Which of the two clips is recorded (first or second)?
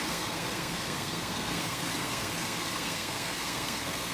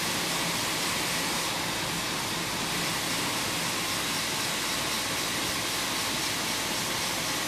second